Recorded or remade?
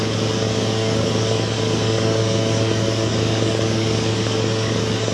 remade